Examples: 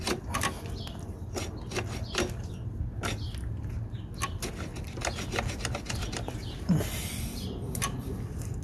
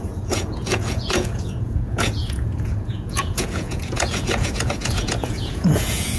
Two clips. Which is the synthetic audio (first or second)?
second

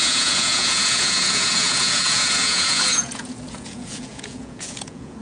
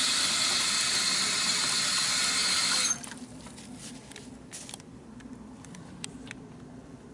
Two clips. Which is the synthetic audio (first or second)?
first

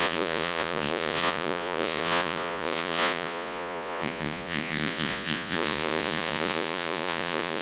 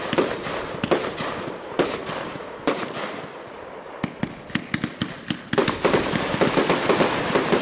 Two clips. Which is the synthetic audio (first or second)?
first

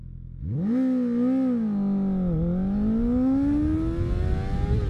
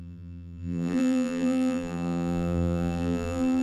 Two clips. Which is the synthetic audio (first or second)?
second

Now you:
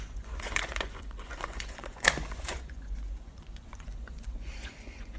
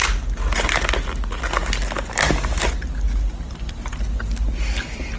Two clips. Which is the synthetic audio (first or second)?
first